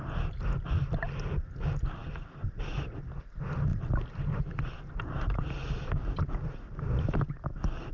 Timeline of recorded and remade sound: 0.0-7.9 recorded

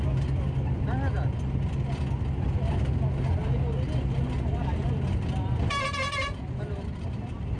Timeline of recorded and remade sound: 0.0-7.6 recorded

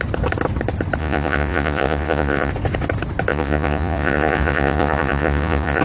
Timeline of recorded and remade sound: 0.0-1.0 recorded; 1.0-2.5 remade; 2.5-3.3 recorded; 3.3-5.8 remade

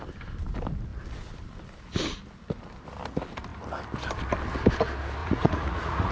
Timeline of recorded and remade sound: 0.0-5.2 recorded; 5.2-6.1 remade

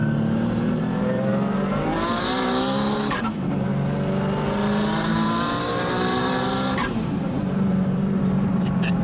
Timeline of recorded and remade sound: 0.0-3.7 remade; 3.7-5.0 recorded; 5.0-9.0 remade

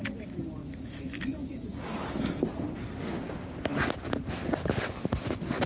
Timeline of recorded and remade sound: 0.0-0.6 recorded; 0.6-2.3 remade; 2.3-5.7 recorded